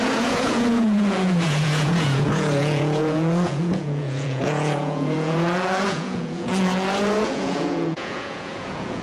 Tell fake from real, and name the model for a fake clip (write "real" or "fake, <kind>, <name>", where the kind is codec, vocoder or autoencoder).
fake, vocoder, Vocos